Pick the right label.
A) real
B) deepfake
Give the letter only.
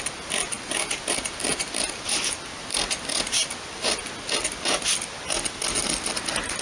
A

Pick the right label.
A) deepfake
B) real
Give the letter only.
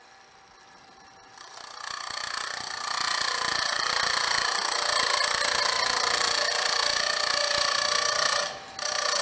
B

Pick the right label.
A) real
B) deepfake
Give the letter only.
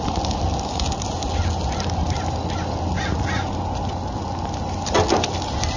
A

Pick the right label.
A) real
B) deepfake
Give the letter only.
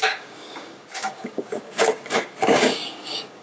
B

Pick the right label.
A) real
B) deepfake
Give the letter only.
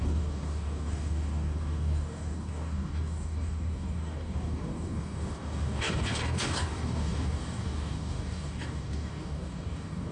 B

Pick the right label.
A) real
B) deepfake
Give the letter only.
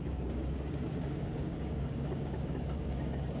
B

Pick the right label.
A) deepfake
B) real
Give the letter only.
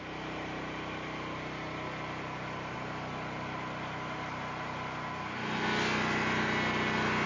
B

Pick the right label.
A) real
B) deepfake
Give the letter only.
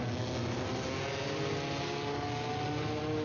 A